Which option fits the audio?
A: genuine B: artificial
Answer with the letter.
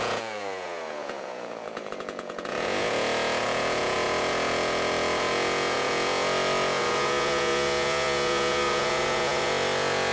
B